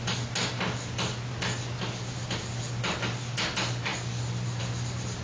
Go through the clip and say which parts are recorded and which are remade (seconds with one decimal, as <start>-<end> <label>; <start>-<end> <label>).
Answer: 0.0-5.2 recorded